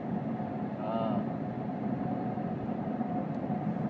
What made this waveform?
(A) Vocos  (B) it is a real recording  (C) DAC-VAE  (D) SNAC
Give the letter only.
B